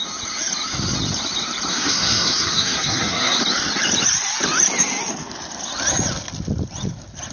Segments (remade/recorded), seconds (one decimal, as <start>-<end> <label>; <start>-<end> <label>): 0.0-1.7 recorded; 1.7-3.4 remade; 3.4-7.3 recorded